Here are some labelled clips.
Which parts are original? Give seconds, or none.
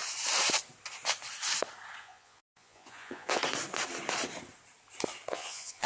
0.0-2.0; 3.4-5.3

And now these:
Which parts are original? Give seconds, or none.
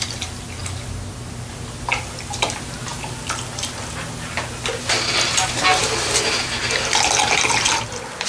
0.0-8.3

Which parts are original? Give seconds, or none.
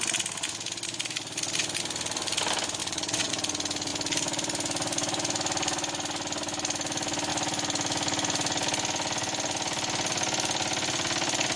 0.0-2.8; 3.3-11.6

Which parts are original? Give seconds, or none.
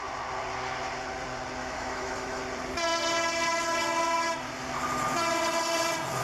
0.0-1.6; 2.4-6.2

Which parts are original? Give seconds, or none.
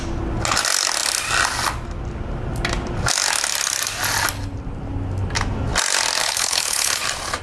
0.0-6.2; 7.0-7.4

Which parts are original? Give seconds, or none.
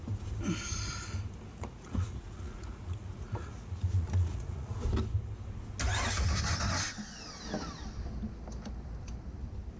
0.0-1.5; 4.8-9.8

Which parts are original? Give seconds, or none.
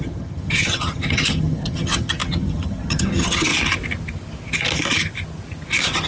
3.5-6.1